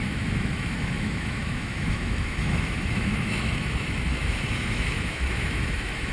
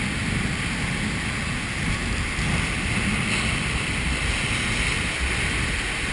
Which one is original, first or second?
second